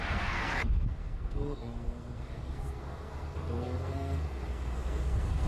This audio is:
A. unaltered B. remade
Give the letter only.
B